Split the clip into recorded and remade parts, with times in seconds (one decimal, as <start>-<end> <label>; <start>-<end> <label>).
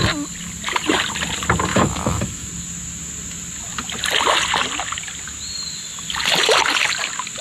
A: 0.0-1.7 recorded; 1.7-2.5 remade; 2.5-7.4 recorded